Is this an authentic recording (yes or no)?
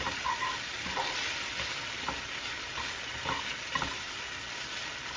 yes